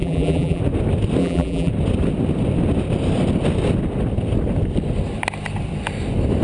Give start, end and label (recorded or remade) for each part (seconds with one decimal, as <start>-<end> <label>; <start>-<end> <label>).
0.0-0.6 remade; 0.6-1.2 recorded; 1.2-1.7 remade; 1.7-6.4 recorded

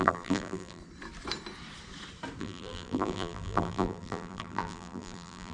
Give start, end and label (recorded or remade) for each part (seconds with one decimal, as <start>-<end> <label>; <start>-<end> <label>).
0.0-0.8 remade; 0.8-2.4 recorded; 2.4-5.5 remade

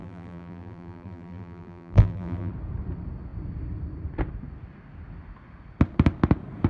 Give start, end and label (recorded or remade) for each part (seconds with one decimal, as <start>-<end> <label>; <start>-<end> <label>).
0.0-2.5 remade; 2.5-6.7 recorded

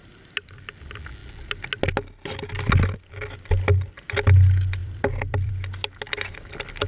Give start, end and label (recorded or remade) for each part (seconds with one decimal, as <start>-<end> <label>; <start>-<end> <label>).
0.0-4.8 recorded; 4.8-5.5 remade; 5.5-6.9 recorded

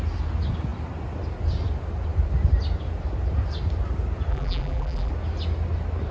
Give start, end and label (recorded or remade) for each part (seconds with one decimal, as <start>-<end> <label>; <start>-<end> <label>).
0.0-4.3 recorded; 4.3-5.1 remade; 5.1-6.1 recorded

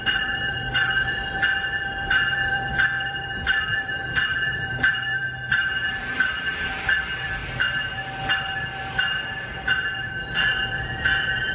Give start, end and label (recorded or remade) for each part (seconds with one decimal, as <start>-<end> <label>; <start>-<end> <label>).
0.0-7.4 remade; 7.4-10.1 recorded; 10.1-11.5 remade

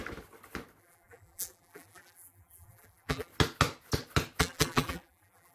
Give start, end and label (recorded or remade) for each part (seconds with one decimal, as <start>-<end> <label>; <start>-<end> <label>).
0.0-0.8 recorded; 0.8-3.3 remade; 3.3-4.4 recorded; 4.4-5.5 remade

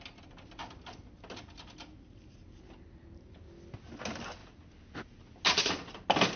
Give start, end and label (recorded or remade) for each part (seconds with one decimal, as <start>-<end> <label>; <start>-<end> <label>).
0.0-6.4 recorded